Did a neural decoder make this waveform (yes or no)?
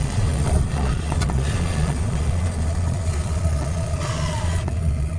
yes